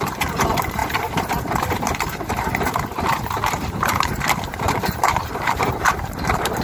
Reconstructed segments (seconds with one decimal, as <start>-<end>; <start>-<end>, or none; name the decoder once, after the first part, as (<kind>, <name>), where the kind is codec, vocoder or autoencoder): 0.0-6.6 (vocoder, BigVGAN v2)